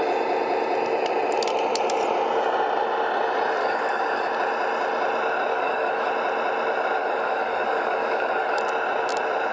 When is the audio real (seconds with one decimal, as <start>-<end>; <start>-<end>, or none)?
0.0-3.6; 4.3-5.5; 6.1-7.0; 8.6-9.5